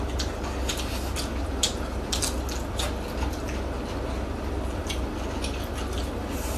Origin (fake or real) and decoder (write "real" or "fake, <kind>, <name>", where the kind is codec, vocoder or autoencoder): real